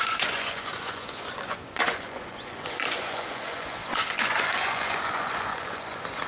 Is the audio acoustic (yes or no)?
no